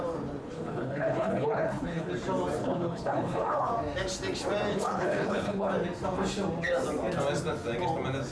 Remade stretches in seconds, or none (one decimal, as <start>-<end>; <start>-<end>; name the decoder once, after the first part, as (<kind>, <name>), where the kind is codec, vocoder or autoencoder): 0.4-2.1 (codec, HILCodec); 2.6-3.7; 4.7-5.7